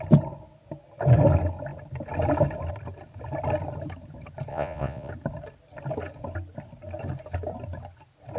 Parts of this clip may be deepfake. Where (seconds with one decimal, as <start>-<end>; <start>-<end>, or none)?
4.5-5.1